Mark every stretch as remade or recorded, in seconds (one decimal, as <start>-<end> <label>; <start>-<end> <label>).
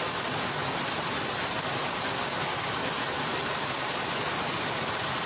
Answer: 0.0-5.3 recorded